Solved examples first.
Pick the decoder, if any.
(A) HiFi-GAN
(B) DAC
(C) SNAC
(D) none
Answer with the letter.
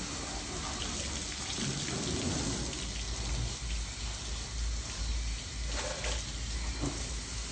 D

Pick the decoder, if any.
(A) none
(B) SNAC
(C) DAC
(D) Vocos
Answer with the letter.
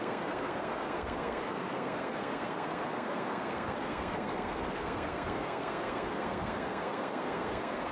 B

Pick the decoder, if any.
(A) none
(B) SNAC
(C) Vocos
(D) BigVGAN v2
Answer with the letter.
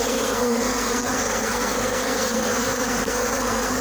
B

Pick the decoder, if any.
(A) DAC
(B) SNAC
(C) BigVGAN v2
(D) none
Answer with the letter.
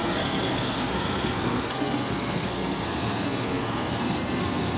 B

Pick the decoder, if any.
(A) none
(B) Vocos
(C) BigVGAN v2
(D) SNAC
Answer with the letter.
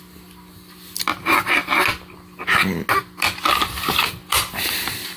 A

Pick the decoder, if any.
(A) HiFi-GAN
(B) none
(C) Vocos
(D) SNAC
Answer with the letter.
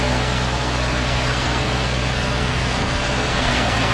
D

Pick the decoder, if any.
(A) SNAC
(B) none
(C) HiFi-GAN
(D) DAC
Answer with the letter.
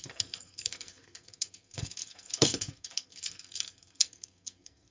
A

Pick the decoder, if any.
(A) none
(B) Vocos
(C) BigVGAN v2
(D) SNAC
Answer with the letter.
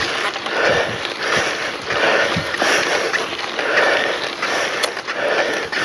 A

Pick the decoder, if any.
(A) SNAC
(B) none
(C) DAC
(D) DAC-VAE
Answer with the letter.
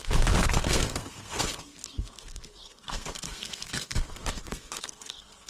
A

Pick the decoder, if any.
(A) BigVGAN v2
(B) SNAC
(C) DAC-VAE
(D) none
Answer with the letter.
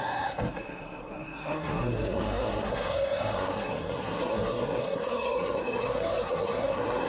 B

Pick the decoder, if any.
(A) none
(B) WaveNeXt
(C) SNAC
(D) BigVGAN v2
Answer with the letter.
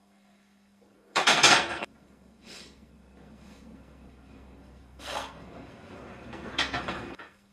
C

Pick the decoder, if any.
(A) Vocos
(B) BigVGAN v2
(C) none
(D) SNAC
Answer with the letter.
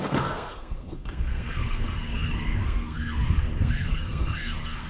D